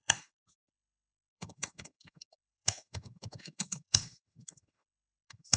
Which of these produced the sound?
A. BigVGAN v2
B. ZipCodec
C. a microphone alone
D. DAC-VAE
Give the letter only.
D